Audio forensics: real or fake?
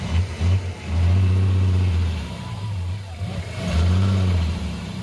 fake